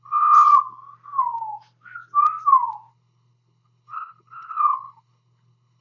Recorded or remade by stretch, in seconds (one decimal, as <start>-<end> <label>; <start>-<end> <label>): 0.0-0.5 remade; 0.5-2.9 recorded; 2.9-5.8 remade